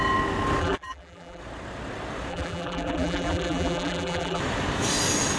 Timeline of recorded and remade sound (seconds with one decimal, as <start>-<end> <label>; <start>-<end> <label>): 0.0-0.6 recorded; 0.6-1.4 remade; 1.4-2.3 recorded; 2.3-4.4 remade; 4.4-5.4 recorded